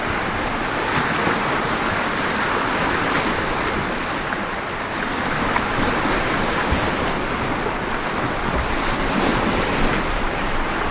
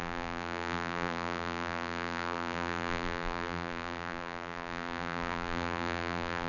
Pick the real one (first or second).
first